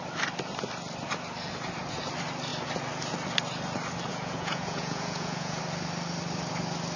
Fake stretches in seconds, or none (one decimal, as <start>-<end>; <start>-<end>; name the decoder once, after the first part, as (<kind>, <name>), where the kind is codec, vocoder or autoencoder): 4.1-5.6 (vocoder, Vocos)